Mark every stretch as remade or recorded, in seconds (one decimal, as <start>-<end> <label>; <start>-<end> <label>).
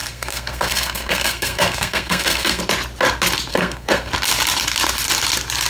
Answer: 0.0-2.6 remade; 2.6-3.5 recorded; 3.5-4.1 remade; 4.1-5.7 recorded